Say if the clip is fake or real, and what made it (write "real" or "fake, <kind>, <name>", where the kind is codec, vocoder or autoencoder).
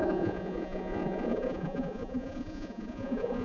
fake, vocoder, Vocos